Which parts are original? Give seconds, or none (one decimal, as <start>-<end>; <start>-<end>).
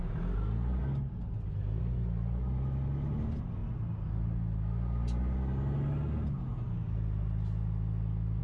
0.0-8.4